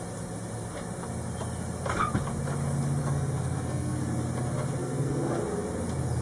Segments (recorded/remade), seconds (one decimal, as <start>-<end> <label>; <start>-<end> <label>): 0.0-3.0 recorded; 3.0-4.0 remade; 4.0-4.8 recorded; 4.8-5.4 remade; 5.4-6.2 recorded